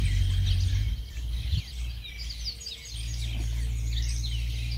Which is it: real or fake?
real